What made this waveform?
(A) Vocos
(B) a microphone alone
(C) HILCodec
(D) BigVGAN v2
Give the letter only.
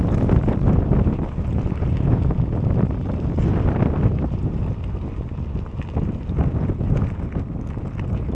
B